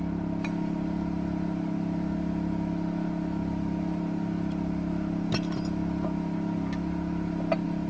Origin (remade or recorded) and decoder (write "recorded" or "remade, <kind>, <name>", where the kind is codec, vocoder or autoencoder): recorded